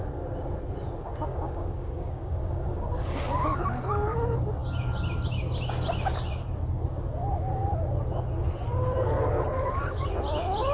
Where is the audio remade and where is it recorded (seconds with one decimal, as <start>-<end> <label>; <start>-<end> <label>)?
0.0-1.3 recorded; 1.3-3.6 remade; 3.6-10.7 recorded